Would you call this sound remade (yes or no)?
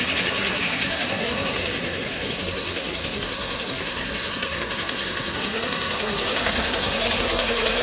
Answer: yes